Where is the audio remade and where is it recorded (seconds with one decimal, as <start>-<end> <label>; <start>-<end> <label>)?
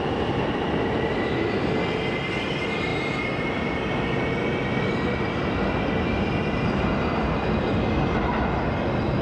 0.0-9.2 recorded